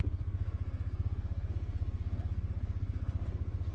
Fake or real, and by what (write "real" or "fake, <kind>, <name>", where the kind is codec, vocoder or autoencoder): fake, codec, SNAC